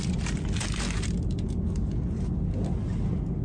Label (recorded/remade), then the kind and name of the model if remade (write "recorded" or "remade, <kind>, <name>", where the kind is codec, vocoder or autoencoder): recorded